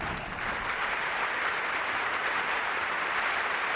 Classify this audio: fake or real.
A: real